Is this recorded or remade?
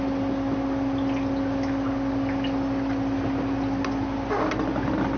recorded